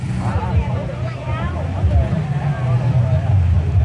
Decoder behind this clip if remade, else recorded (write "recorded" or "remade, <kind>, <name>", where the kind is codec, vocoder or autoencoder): recorded